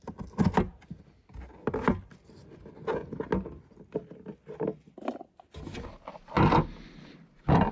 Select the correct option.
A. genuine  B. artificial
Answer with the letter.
A